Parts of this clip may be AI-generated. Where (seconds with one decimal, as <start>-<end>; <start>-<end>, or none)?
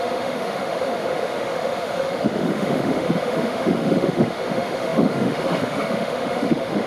0.0-6.9